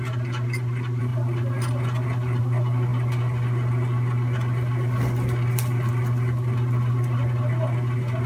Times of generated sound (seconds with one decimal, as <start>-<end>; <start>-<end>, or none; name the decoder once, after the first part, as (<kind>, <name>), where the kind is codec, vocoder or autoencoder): none